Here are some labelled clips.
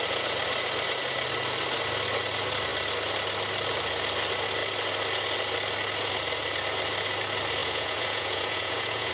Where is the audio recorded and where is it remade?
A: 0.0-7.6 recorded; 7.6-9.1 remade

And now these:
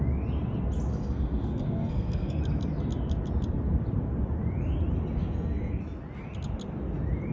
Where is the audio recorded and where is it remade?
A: 0.0-0.9 recorded; 0.9-2.4 remade; 2.4-5.2 recorded; 5.2-5.8 remade; 5.8-7.3 recorded

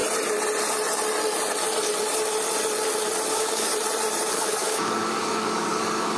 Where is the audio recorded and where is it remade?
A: 0.0-3.3 recorded; 3.3-3.7 remade; 3.7-4.3 recorded; 4.3-6.2 remade

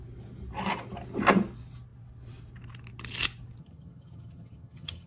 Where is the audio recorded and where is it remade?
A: 0.0-3.6 recorded; 3.6-5.1 remade